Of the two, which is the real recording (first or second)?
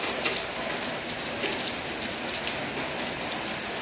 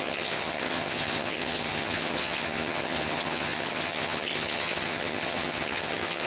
first